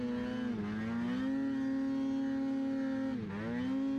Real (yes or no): yes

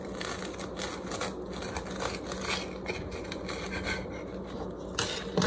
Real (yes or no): yes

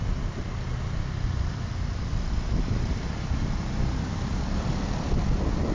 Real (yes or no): yes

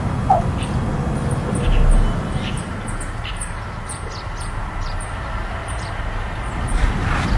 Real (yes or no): yes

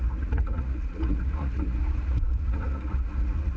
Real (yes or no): no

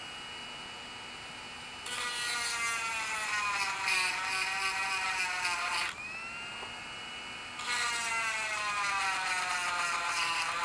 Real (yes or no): yes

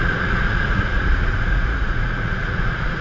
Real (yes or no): no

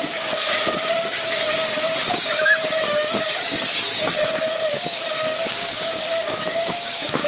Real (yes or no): no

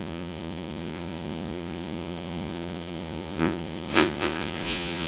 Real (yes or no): no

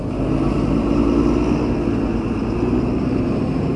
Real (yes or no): yes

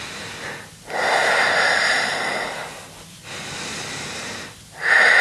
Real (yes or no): yes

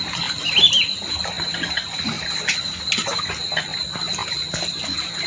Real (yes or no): yes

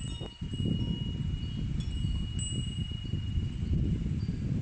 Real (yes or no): yes